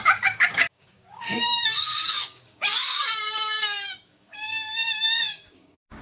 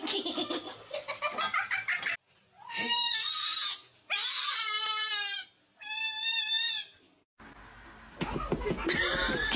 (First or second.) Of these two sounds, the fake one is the first